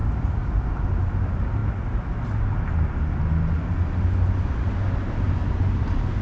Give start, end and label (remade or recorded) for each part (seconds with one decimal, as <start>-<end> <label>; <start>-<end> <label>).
0.0-6.2 recorded